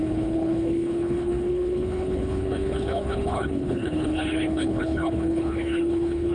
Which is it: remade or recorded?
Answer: remade